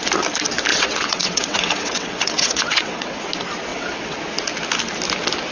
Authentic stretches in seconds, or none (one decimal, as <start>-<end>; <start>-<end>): 0.0-0.7; 3.2-3.7; 4.2-5.5